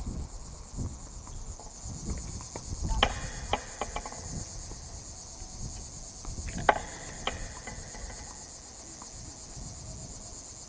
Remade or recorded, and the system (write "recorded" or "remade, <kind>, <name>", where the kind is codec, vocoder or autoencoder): recorded